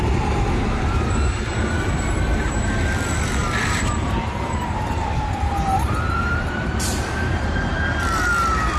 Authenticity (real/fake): fake